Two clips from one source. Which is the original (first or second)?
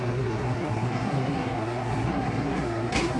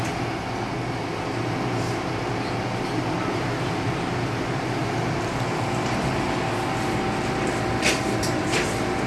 second